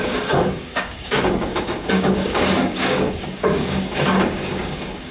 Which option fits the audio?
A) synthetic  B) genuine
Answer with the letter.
A